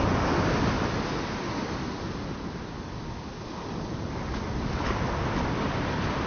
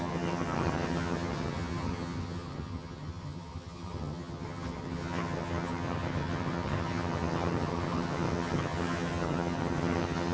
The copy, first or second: second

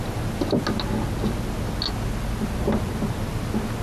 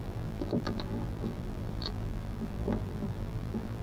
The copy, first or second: second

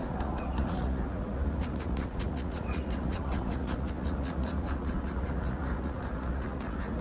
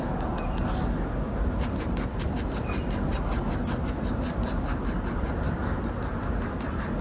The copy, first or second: first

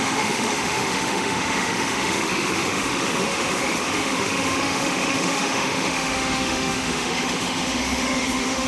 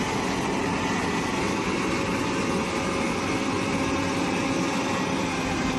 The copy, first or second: first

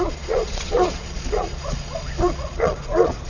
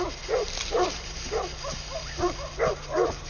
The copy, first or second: first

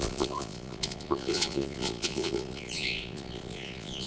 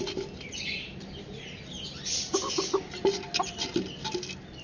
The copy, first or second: first